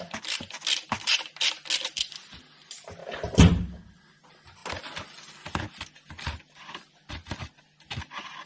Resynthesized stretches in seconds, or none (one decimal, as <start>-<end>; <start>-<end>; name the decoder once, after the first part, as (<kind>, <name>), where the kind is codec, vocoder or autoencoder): none